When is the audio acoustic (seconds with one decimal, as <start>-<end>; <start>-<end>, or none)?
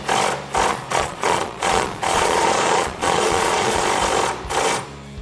0.0-0.7; 3.8-5.2